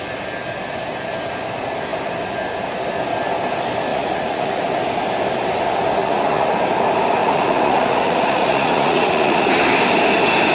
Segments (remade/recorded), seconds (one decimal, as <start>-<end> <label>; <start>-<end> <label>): 0.0-3.9 recorded; 3.9-4.6 remade; 4.6-6.0 recorded; 6.0-6.5 remade; 6.5-7.2 recorded; 7.2-9.5 remade; 9.5-10.5 recorded